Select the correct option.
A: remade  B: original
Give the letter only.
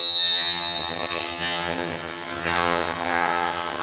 A